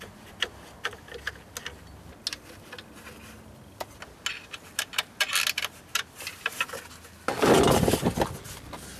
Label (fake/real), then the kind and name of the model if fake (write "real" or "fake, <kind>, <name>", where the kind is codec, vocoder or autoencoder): real